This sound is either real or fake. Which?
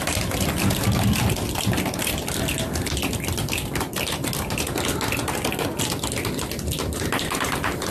real